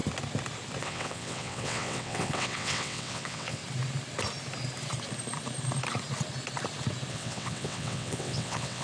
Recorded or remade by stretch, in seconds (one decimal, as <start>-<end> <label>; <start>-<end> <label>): 0.0-0.8 recorded; 0.8-3.6 remade; 3.6-7.1 recorded; 7.1-8.8 remade